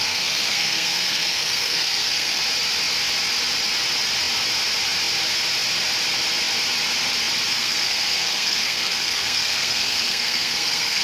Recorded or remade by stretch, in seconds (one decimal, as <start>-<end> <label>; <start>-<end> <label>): 0.0-2.4 remade; 2.4-7.5 recorded; 7.5-11.0 remade